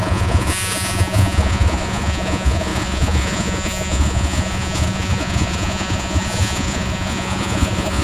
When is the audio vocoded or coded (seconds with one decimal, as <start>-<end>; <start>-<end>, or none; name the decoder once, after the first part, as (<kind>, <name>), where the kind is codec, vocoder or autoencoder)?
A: 0.0-8.0 (vocoder, Vocos)

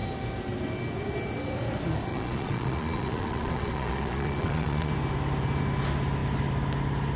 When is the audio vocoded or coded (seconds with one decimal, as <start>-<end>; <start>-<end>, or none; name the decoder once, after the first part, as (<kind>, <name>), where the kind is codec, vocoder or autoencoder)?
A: 2.1-4.9 (vocoder, Vocos)

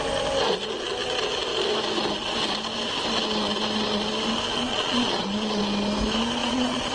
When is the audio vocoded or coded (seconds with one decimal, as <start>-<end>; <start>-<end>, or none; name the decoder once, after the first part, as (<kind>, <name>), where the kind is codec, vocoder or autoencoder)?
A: 4.7-5.6 (vocoder, Vocos); 6.4-6.9